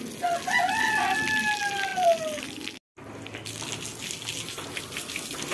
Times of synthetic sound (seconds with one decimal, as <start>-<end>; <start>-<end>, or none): none